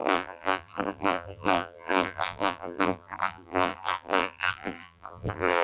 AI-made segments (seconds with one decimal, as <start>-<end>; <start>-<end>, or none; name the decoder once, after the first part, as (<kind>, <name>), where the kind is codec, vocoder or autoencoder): 0.0-5.6 (vocoder, BigVGAN v2)